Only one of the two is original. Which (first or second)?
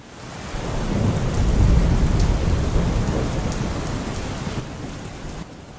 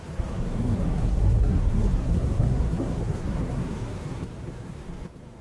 first